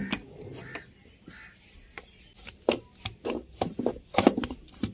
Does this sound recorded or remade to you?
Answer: recorded